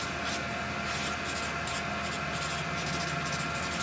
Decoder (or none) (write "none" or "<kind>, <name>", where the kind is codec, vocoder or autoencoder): none